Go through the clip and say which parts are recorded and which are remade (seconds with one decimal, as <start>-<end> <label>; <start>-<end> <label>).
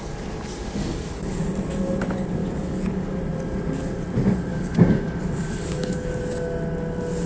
0.0-0.8 recorded; 0.8-1.4 remade; 1.4-2.4 recorded; 2.4-3.2 remade; 3.2-4.5 recorded; 4.5-6.2 remade; 6.2-7.3 recorded